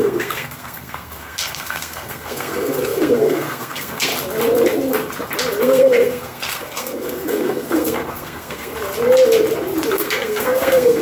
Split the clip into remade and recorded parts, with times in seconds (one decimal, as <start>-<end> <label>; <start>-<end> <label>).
0.0-4.1 remade; 4.1-5.6 recorded; 5.6-8.7 remade; 8.7-9.9 recorded; 9.9-11.0 remade